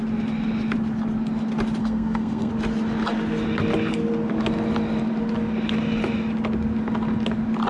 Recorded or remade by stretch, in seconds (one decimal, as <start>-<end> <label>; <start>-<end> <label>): 0.0-1.8 recorded; 1.8-2.5 remade; 2.5-7.7 recorded